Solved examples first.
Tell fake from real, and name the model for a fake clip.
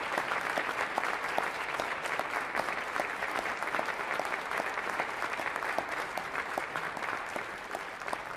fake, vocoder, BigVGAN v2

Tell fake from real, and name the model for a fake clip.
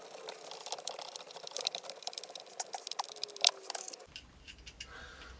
fake, vocoder, BigVGAN v2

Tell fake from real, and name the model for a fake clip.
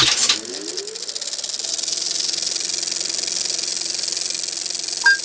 real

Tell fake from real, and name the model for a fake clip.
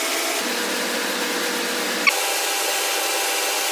real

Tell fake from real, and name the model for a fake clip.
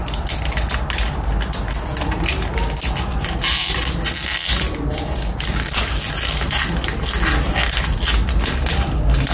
real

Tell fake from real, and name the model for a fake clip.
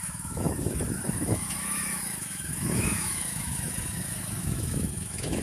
fake, autoencoder, DAC-VAE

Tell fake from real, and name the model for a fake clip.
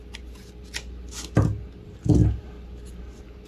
real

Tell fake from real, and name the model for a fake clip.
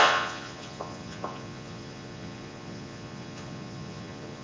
fake, vocoder, Vocos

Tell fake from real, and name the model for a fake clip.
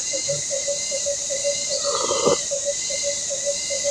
real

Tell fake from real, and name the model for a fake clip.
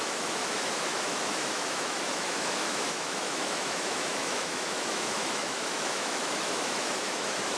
fake, autoencoder, DAC-VAE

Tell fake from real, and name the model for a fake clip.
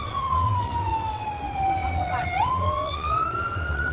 fake, vocoder, WaveNeXt